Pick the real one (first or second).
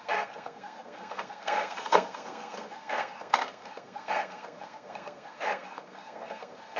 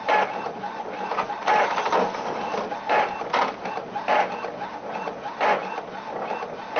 second